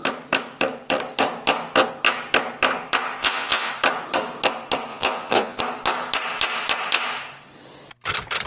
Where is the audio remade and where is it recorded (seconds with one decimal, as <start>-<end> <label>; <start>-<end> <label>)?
0.0-3.2 recorded; 3.2-3.7 remade; 3.7-4.9 recorded; 4.9-5.6 remade; 5.6-8.5 recorded